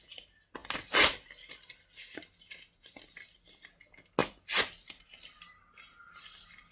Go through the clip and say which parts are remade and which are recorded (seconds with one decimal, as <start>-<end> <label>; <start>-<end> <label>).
0.0-6.7 recorded